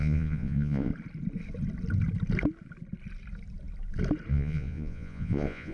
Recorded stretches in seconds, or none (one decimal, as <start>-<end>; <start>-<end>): 0.9-4.3